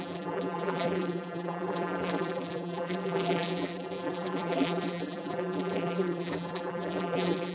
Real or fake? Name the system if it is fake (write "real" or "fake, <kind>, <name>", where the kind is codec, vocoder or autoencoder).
fake, vocoder, BigVGAN v2